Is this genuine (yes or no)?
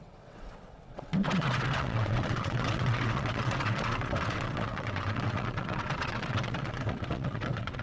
no